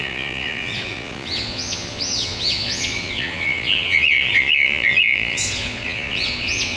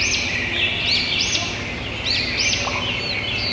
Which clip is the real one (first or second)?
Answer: second